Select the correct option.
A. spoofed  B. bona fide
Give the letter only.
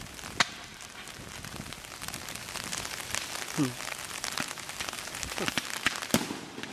B